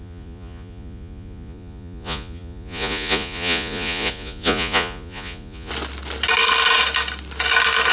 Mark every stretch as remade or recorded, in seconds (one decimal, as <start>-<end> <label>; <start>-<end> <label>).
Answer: 0.0-5.7 remade; 5.7-7.9 recorded